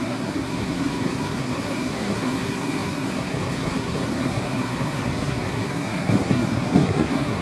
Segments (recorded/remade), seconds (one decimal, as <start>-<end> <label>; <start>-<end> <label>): 0.0-7.4 remade